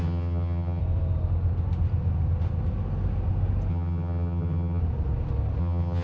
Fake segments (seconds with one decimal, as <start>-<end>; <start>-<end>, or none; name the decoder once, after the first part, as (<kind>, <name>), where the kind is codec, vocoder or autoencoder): 0.0-0.8 (vocoder, HiFi-GAN); 3.7-4.8; 5.6-6.0